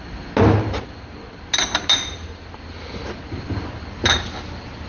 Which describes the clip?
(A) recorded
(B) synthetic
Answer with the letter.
A